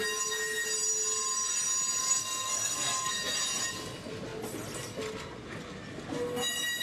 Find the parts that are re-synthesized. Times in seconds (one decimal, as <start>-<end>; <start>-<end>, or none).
2.0-3.1